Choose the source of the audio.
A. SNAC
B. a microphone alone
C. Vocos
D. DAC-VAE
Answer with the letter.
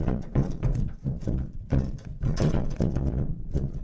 C